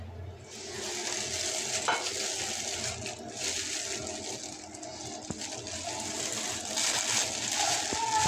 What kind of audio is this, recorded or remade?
recorded